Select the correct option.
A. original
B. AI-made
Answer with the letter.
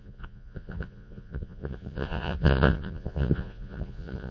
B